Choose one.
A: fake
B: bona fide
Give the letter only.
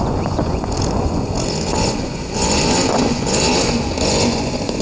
A